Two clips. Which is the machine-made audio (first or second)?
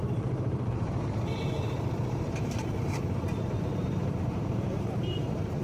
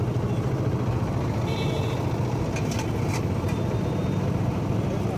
first